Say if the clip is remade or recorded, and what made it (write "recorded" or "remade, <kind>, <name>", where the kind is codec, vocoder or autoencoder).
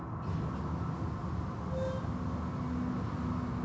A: recorded